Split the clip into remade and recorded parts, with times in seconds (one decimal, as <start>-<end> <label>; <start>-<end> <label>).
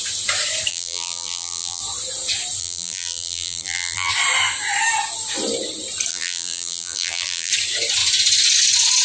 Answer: 0.0-0.7 recorded; 0.7-1.8 remade; 1.8-2.6 recorded; 2.6-4.1 remade; 4.1-6.1 recorded; 6.1-7.5 remade; 7.5-9.0 recorded